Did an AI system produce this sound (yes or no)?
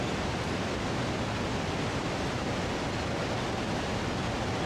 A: no